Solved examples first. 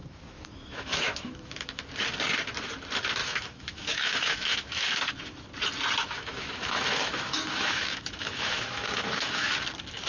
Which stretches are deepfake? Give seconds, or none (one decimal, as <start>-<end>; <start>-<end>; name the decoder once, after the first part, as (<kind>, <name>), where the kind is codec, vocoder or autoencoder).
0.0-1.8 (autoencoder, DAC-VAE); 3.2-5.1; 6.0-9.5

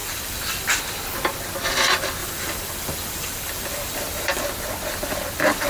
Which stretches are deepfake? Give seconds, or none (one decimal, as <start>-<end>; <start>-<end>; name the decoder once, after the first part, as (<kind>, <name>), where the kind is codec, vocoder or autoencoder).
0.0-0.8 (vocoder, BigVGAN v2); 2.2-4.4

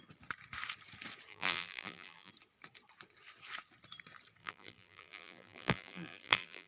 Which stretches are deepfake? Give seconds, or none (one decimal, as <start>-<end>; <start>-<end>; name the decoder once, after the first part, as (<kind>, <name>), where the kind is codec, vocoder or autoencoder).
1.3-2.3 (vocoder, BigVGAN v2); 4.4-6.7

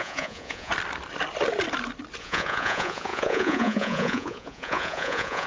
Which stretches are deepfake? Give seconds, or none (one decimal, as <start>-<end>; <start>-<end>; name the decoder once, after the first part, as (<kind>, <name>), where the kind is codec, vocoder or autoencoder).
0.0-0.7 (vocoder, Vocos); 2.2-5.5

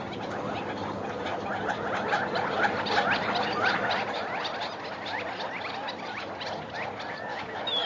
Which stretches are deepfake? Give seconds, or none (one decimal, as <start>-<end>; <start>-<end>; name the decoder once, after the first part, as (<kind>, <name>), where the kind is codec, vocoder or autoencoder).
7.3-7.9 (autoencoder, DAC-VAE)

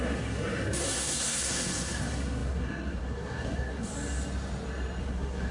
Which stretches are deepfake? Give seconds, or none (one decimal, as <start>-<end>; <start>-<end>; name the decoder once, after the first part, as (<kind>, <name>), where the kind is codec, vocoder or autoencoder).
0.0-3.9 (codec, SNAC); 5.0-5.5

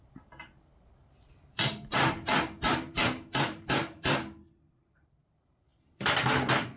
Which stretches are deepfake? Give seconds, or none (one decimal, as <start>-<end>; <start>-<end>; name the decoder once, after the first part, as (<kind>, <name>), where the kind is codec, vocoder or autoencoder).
0.0-6.8 (vocoder, BigVGAN v2)